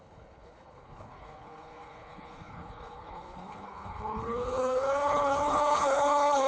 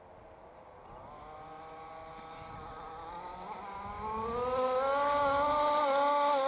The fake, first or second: first